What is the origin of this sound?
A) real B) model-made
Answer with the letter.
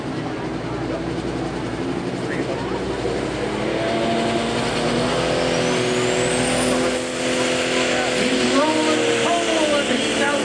A